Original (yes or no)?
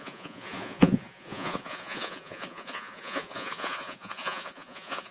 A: no